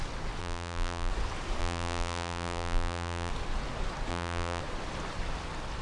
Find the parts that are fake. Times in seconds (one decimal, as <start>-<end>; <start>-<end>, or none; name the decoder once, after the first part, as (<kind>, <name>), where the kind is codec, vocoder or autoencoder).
0.4-1.1 (vocoder, BigVGAN v2); 1.6-3.3; 4.1-4.6